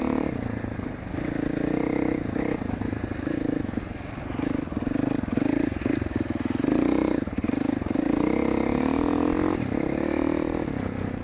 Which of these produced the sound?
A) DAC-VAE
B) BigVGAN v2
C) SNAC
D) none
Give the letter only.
D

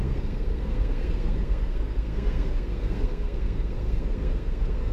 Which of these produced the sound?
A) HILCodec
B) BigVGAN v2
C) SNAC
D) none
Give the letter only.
C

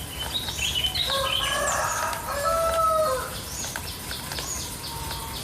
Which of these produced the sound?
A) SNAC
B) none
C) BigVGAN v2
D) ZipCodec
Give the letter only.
B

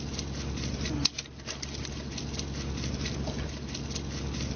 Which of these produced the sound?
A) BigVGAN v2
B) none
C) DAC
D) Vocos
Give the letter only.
B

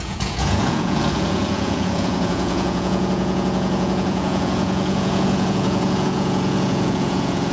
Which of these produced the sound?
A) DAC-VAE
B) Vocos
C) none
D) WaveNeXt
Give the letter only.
B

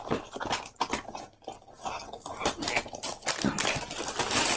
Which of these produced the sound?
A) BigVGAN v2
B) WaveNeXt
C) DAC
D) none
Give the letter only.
D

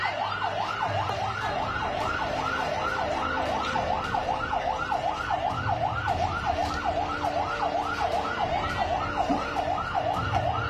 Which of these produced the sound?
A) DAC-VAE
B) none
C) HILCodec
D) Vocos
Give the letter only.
B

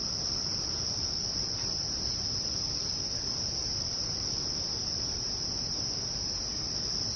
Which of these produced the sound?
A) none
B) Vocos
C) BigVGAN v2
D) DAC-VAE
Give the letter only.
A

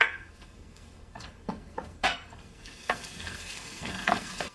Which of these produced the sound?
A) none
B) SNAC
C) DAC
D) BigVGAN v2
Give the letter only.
B